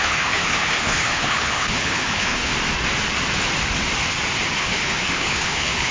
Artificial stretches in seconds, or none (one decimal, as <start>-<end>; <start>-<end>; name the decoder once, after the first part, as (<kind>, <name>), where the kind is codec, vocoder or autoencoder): 0.0-2.5 (codec, HILCodec); 4.6-5.9